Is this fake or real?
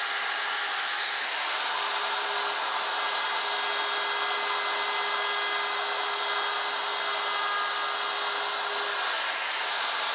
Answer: real